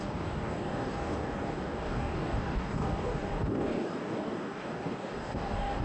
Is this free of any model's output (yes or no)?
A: no